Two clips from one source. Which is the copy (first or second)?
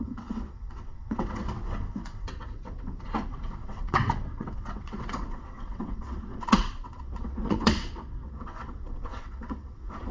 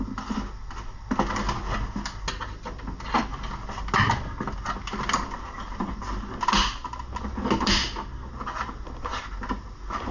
first